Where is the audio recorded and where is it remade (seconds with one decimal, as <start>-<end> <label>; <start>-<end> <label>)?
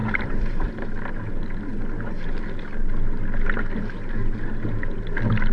0.0-0.7 remade; 0.7-5.5 recorded